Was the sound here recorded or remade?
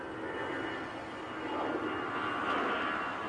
recorded